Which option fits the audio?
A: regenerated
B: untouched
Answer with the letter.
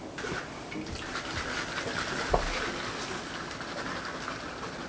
B